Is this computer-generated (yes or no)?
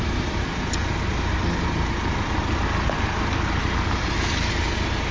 no